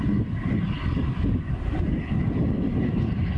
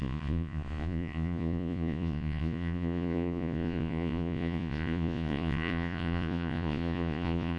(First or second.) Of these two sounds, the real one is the first